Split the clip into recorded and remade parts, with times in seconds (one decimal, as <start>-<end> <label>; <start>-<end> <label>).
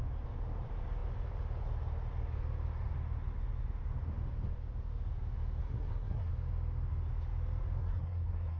0.0-5.6 recorded; 5.6-6.3 remade; 6.3-7.8 recorded; 7.8-8.6 remade